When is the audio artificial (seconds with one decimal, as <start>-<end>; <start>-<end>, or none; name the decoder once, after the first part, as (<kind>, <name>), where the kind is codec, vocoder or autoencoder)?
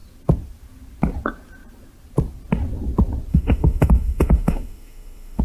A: 3.3-5.4 (autoencoder, DAC-VAE)